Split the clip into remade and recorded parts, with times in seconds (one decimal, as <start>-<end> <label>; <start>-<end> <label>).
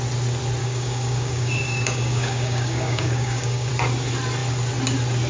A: 0.0-0.6 recorded; 0.6-3.7 remade; 3.7-5.3 recorded